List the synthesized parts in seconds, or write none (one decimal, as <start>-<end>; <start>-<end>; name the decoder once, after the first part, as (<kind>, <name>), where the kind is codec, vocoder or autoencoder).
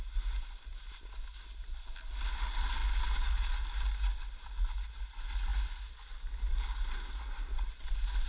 none